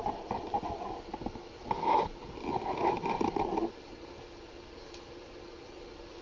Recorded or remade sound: recorded